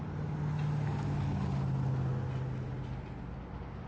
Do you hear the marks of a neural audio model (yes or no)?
no